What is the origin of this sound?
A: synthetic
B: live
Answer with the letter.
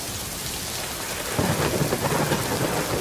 B